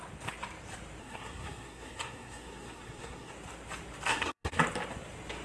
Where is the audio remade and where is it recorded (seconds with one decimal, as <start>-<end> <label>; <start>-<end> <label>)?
0.0-1.0 recorded; 1.0-3.3 remade; 3.3-4.1 recorded; 4.1-4.6 remade; 4.6-5.4 recorded